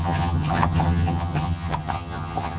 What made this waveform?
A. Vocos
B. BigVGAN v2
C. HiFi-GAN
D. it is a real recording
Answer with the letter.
C